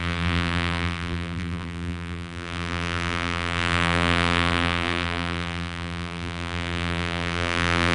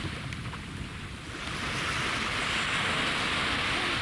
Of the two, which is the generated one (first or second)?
first